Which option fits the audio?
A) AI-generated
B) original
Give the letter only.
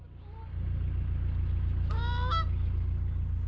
B